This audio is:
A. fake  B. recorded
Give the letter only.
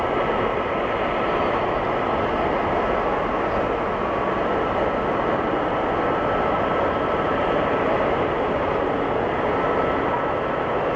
B